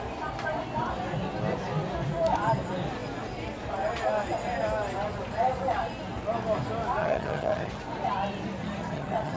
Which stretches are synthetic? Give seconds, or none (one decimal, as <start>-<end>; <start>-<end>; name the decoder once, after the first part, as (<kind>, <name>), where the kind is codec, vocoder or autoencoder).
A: 7.0-7.7 (vocoder, HiFi-GAN); 8.6-9.4

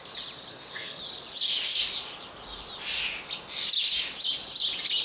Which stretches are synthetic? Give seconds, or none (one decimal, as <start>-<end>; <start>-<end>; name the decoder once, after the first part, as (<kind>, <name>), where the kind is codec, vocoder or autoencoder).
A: 0.5-1.0 (codec, SNAC)

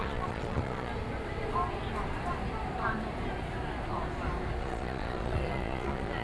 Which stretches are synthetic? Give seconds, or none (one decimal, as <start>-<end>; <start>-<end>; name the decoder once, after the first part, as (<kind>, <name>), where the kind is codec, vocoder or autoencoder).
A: 0.0-0.9 (vocoder, Vocos); 4.6-6.2

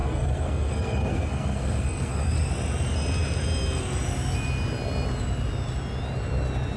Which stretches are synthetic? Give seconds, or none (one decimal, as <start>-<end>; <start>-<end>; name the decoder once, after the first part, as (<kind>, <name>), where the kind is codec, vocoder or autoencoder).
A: 0.0-2.2 (codec, SNAC)

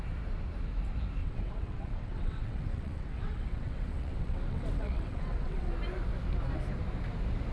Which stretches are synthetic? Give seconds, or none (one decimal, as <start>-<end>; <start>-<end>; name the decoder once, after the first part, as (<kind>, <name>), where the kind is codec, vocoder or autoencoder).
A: 1.2-5.7 (vocoder, WaveNeXt)

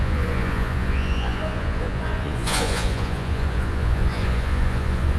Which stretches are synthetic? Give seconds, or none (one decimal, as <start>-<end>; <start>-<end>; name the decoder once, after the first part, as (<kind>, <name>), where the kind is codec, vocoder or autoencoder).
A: 0.0-5.2 (vocoder, Vocos)

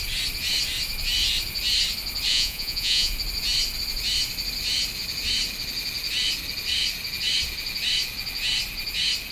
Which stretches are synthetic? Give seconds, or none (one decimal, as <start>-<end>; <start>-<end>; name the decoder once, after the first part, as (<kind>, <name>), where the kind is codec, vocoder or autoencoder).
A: 2.3-3.1 (vocoder, Vocos)

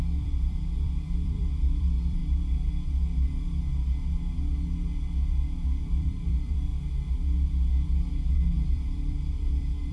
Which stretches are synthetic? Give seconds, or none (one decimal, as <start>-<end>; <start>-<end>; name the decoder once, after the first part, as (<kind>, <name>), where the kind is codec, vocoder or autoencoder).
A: 0.0-2.2 (vocoder, BigVGAN v2); 5.8-6.7; 8.5-9.9